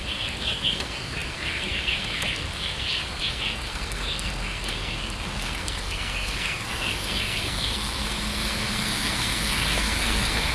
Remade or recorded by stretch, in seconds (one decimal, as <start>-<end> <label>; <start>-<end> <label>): 0.0-10.5 remade

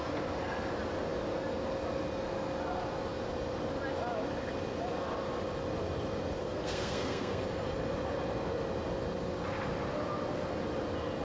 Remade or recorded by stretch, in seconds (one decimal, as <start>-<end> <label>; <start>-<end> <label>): 0.0-6.4 recorded; 6.4-7.4 remade; 7.4-11.2 recorded